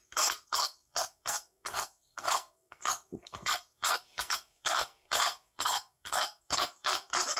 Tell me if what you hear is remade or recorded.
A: remade